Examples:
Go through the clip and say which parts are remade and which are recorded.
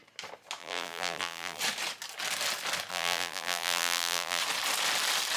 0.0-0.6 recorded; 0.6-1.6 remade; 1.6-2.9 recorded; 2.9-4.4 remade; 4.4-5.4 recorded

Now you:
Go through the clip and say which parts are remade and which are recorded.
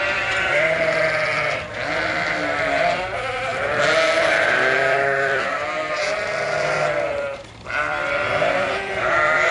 0.0-1.3 remade; 1.3-1.9 recorded; 1.9-9.5 remade